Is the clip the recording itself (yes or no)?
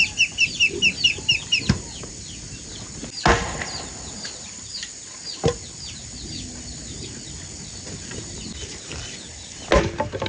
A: yes